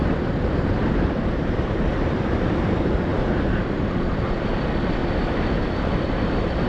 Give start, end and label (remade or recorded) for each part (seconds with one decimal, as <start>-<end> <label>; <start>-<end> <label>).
0.0-0.8 recorded; 0.8-3.1 remade; 3.1-4.6 recorded; 4.6-5.0 remade; 5.0-5.6 recorded; 5.6-6.7 remade